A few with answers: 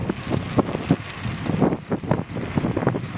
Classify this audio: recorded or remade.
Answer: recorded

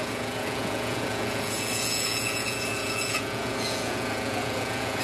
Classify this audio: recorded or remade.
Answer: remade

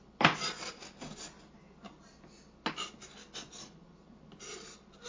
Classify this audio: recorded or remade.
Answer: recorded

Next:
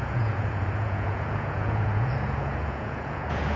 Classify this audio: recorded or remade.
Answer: remade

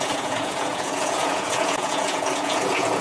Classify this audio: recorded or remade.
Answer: remade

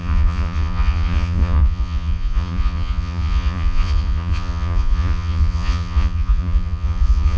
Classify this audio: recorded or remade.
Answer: remade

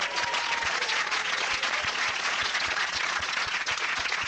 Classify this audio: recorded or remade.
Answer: remade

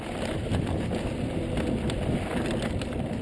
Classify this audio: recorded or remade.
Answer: recorded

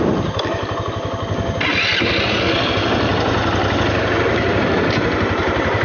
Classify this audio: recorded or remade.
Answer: recorded